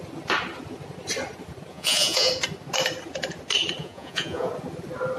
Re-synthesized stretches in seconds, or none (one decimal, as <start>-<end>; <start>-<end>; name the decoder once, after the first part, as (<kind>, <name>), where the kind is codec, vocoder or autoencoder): 1.7-2.3 (vocoder, Vocos); 3.8-4.5